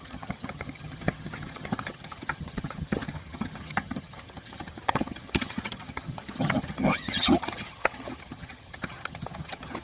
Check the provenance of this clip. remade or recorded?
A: remade